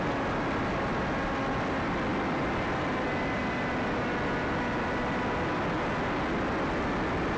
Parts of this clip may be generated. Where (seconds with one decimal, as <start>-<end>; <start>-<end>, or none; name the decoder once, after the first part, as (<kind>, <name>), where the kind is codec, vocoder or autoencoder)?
none

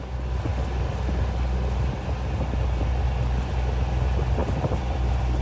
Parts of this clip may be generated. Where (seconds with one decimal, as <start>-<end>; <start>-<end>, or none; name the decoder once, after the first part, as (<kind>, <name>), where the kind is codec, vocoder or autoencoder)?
none

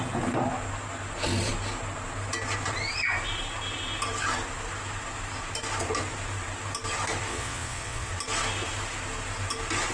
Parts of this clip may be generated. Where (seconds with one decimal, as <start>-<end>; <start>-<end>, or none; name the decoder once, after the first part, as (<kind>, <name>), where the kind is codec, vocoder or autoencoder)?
7.3-8.1 (vocoder, WaveNeXt)

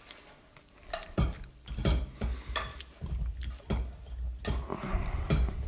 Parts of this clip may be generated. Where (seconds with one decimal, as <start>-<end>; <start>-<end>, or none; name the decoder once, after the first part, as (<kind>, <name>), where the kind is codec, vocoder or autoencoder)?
2.7-3.3 (vocoder, BigVGAN v2); 4.7-5.7

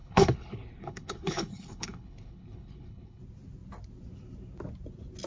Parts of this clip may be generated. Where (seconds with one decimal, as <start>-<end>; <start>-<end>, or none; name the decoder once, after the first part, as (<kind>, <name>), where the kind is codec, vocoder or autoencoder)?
0.0-3.2 (codec, HILCodec)

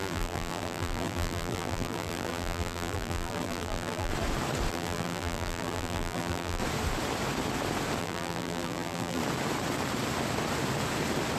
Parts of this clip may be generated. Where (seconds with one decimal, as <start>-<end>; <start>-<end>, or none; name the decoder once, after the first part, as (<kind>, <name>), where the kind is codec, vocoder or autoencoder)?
0.0-4.1 (vocoder, BigVGAN v2); 4.7-6.6; 8.0-9.2